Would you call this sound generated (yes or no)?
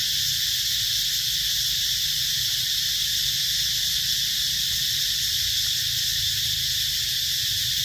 no